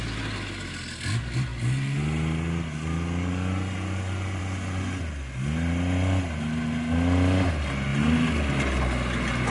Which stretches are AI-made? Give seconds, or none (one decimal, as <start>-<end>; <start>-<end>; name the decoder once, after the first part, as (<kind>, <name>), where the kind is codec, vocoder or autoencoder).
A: none

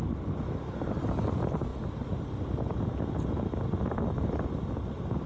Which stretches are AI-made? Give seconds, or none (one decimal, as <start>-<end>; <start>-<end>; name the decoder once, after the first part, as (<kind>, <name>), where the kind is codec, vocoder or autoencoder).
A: none

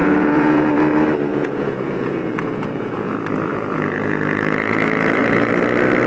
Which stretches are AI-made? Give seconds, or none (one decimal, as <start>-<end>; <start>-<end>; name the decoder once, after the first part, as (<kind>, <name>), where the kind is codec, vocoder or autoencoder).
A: 0.0-0.7 (vocoder, Vocos); 1.3-3.1; 3.5-5.5

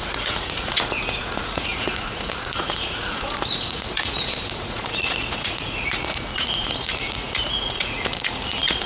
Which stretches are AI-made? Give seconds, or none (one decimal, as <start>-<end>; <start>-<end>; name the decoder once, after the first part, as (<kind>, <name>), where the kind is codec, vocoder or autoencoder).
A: 0.0-8.9 (vocoder, Vocos)

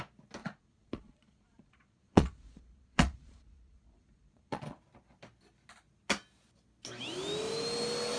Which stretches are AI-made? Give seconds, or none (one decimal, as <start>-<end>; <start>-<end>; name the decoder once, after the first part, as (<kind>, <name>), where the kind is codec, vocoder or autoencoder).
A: 0.4-4.8 (vocoder, Vocos)

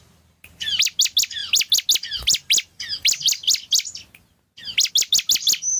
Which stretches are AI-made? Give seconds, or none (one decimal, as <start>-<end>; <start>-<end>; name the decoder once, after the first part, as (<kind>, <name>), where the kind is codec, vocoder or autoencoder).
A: none

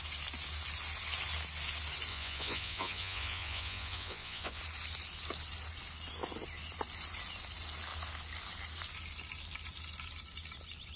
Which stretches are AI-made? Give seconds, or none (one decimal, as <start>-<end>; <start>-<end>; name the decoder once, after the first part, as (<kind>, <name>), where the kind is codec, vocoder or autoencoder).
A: 2.1-4.6 (vocoder, Vocos)

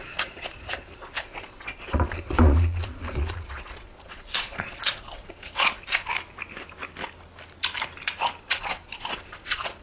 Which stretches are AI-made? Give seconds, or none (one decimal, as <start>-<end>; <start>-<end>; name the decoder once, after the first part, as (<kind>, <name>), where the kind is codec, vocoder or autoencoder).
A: 0.0-6.1 (vocoder, Vocos); 8.4-9.8